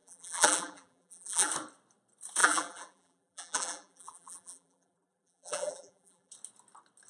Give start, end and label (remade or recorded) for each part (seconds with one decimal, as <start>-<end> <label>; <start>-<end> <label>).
0.0-1.5 remade; 1.5-2.4 recorded; 2.4-6.3 remade; 6.3-7.1 recorded